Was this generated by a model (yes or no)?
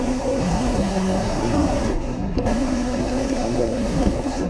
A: yes